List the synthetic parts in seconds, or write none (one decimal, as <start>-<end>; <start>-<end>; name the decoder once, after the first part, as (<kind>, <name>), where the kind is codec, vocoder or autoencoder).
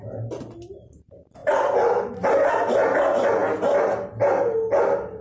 none